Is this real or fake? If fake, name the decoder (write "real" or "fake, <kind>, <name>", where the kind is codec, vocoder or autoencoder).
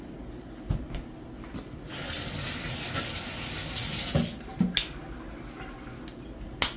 real